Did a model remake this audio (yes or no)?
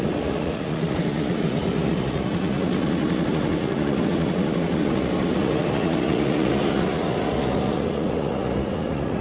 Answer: yes